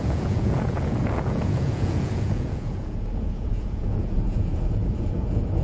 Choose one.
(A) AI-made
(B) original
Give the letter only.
A